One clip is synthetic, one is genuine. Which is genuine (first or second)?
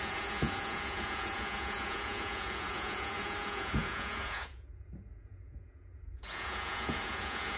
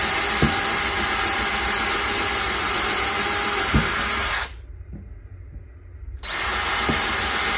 second